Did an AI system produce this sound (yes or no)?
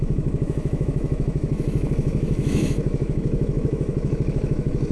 yes